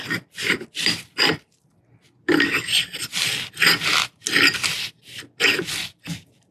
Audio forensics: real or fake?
real